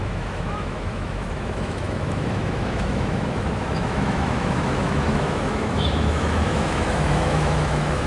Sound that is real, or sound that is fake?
fake